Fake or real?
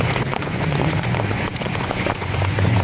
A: fake